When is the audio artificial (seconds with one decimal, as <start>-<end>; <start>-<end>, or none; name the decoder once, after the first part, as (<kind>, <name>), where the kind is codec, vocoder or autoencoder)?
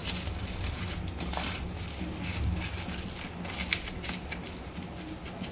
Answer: none